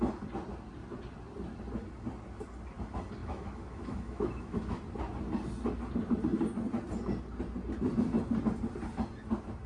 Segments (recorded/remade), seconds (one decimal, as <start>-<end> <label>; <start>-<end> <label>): 0.0-3.2 recorded; 3.2-4.8 remade; 4.8-9.7 recorded